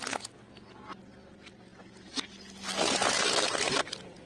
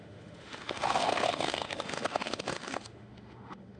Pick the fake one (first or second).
second